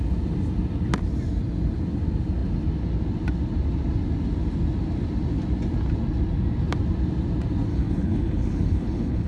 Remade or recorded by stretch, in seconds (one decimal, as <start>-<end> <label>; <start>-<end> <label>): 0.0-7.7 recorded; 7.7-9.3 remade